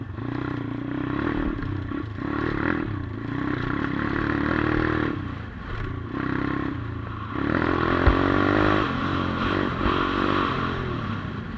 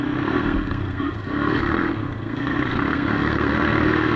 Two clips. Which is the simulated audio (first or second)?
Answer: second